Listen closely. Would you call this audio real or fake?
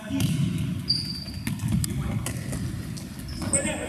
real